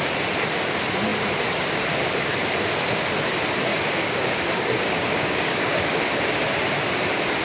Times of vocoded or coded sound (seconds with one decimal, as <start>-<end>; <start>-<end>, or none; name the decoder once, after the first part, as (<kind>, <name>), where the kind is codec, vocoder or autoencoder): 3.7-6.0 (codec, DAC)